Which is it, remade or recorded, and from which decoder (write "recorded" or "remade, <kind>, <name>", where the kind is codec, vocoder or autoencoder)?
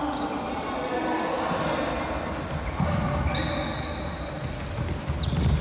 recorded